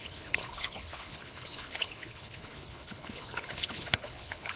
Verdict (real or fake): fake